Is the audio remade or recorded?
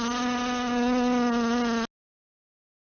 recorded